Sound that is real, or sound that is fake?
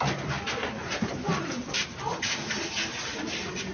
real